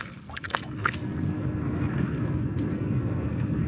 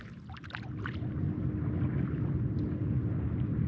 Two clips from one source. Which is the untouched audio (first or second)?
second